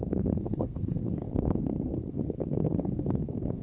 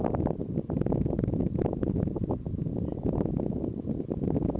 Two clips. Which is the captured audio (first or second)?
second